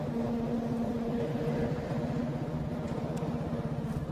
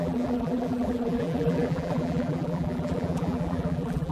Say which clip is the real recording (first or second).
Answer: first